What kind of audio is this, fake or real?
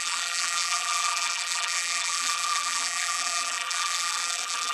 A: fake